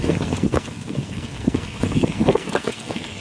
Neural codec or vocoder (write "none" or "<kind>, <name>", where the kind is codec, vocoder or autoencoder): codec, SNAC